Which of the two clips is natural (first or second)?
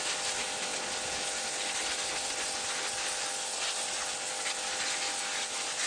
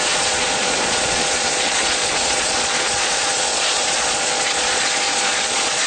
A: first